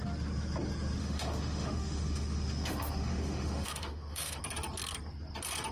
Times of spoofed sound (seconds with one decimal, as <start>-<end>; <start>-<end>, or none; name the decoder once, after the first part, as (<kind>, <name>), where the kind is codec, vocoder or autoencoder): 1.0-4.4 (autoencoder, DAC-VAE)